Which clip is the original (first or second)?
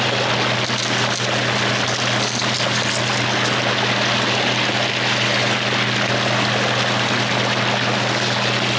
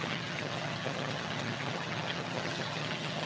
first